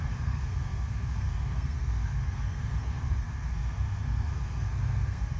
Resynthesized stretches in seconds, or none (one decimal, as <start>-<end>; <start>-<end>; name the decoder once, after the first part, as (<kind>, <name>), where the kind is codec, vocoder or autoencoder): 0.0-5.4 (codec, SNAC)